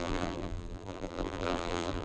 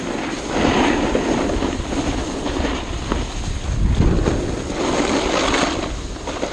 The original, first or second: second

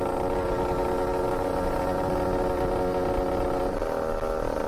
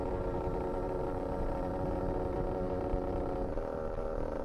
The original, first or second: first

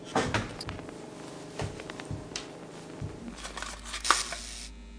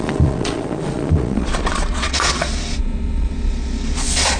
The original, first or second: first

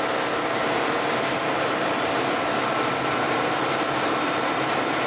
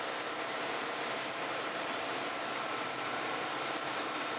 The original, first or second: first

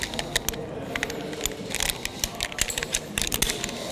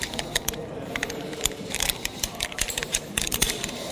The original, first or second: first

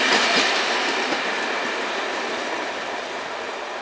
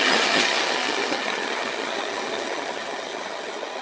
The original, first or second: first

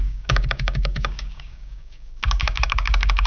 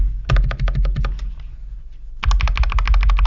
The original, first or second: second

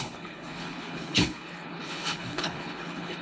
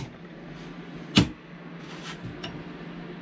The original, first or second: second